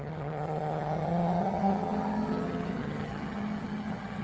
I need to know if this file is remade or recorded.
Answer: remade